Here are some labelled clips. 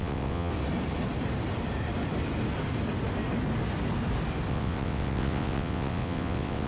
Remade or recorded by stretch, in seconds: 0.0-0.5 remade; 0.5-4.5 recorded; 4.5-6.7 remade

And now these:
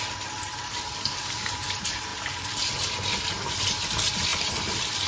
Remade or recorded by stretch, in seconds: 0.0-5.1 recorded

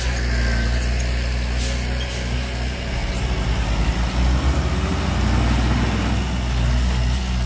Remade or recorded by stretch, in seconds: 0.0-7.5 recorded

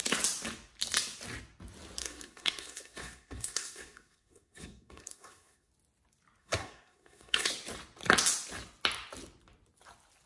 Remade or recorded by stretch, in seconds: 0.0-2.0 recorded; 2.0-5.7 remade; 5.7-6.4 recorded; 6.4-7.5 remade; 7.5-10.3 recorded

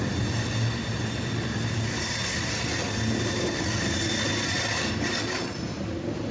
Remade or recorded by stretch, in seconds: 0.0-6.3 recorded

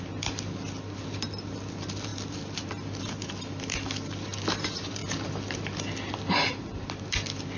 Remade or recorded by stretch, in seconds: 0.0-7.6 recorded

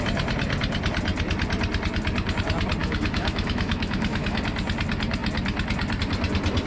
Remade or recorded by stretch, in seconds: 0.0-2.8 recorded; 2.8-4.4 remade; 4.4-6.7 recorded

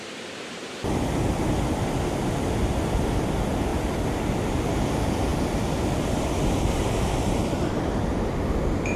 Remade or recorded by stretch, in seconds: 0.0-9.0 recorded